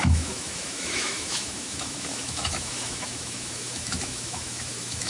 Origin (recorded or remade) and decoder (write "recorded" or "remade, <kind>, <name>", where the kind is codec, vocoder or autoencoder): remade, autoencoder, DAC-VAE